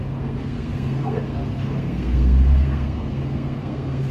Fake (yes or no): yes